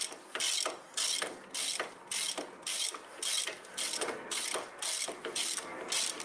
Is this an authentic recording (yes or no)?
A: yes